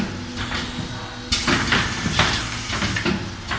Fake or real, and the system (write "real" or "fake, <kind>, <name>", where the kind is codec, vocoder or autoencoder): real